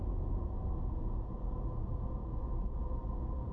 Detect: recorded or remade remade